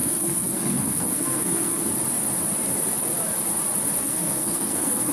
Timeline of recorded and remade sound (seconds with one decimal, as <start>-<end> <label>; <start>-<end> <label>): 0.0-1.8 remade; 1.8-4.0 recorded; 4.0-5.1 remade